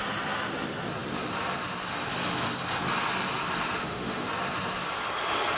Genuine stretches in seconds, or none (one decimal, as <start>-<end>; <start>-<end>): 0.0-3.8; 4.3-5.6